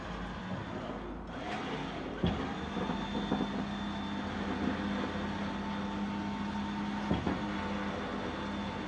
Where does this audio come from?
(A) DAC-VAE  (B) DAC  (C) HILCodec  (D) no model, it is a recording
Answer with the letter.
D